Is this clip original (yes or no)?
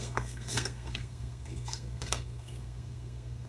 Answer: no